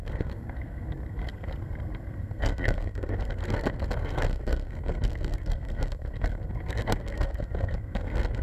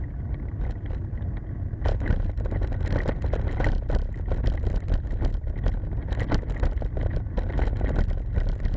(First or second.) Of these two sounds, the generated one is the first